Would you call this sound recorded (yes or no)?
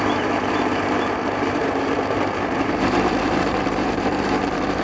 no